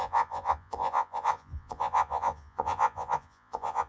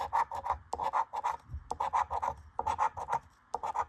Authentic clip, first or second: second